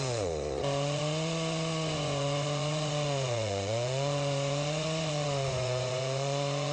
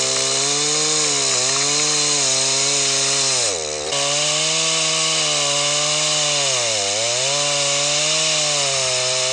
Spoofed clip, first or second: first